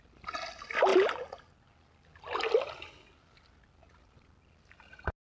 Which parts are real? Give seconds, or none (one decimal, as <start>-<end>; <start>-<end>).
0.0-5.2